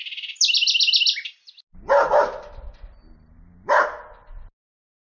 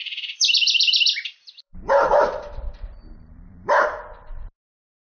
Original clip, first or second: first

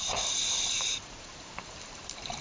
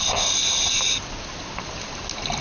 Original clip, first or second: second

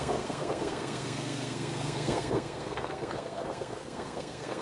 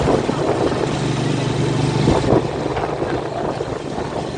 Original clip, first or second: second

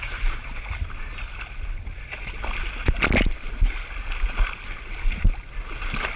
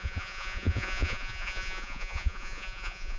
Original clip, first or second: first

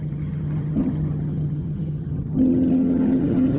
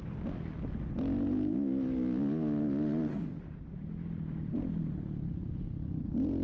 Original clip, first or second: second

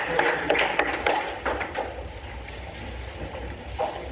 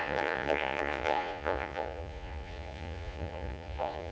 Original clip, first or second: first